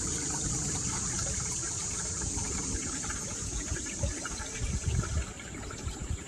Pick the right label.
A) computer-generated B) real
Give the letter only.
A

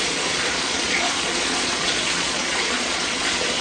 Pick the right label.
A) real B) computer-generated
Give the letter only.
B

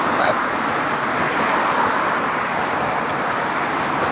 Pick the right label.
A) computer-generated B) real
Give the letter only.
B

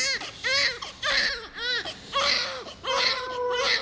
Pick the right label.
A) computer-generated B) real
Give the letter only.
B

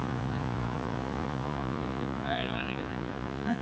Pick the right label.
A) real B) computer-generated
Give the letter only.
B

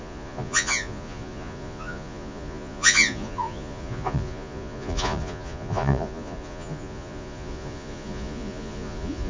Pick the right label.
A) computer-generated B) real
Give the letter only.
A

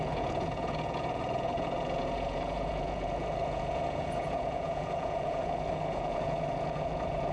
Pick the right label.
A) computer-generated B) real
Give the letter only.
A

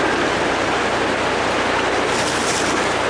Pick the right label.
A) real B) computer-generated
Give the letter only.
A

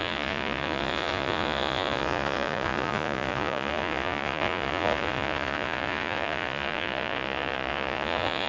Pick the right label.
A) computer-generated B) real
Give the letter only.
A